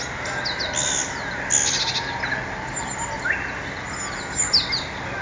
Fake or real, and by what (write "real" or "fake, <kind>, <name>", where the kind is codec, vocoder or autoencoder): real